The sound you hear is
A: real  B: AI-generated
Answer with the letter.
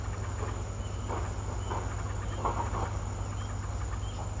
A